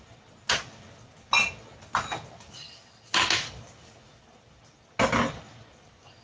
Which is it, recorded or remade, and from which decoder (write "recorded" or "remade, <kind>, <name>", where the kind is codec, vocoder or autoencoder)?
recorded